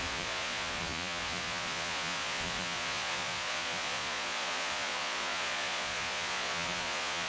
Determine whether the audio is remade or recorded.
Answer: remade